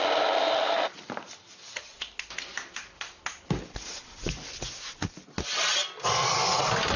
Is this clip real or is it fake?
real